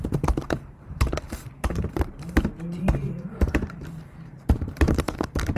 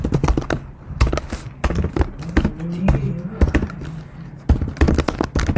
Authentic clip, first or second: second